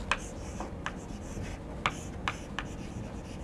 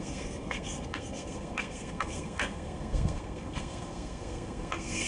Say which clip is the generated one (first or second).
second